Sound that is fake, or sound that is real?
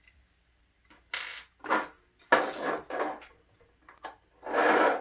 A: real